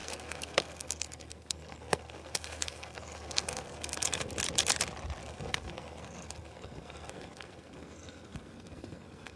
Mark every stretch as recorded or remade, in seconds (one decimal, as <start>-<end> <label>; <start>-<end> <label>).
0.0-4.3 remade; 4.3-5.2 recorded; 5.2-9.4 remade